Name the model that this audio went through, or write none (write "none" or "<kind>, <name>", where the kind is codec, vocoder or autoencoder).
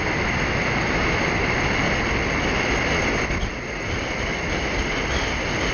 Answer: none